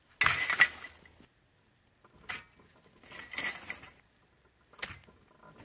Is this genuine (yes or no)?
yes